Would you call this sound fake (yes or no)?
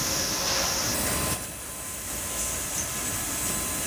no